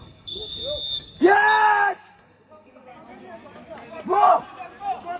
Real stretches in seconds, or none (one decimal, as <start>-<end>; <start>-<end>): 0.6-2.1; 2.9-5.2